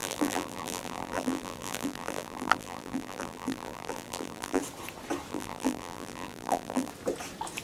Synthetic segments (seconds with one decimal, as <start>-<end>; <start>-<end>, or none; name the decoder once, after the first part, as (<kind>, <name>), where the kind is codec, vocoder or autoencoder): 0.0-4.6 (vocoder, BigVGAN v2); 5.3-6.9